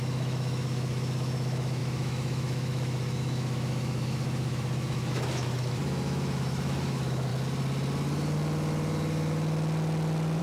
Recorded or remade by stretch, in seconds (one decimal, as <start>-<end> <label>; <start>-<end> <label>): 0.0-7.3 remade; 7.3-10.4 recorded

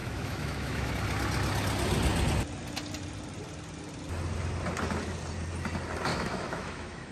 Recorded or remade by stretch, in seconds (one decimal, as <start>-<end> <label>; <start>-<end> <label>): 0.0-0.9 remade; 0.9-6.1 recorded; 6.1-7.1 remade